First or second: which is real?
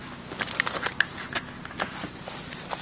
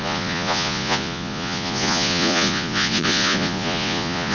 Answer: first